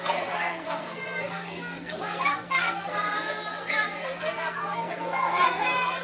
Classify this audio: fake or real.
fake